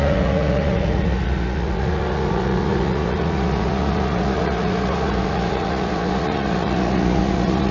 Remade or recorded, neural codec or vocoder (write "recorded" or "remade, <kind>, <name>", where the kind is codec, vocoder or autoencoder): remade, vocoder, Vocos